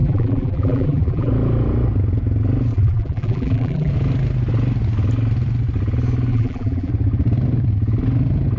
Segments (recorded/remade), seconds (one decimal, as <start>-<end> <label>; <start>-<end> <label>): 0.0-1.3 remade; 1.3-2.7 recorded; 2.7-3.9 remade; 3.9-6.3 recorded; 6.3-6.9 remade; 6.9-8.6 recorded